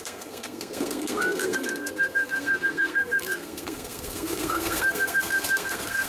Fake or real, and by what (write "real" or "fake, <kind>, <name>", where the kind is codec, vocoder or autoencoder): fake, codec, SNAC